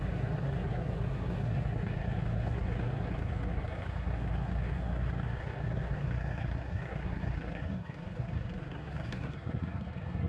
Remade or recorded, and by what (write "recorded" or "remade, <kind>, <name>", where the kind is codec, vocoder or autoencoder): remade, codec, SNAC